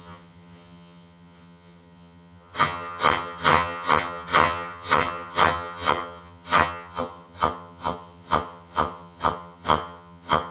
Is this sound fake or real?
fake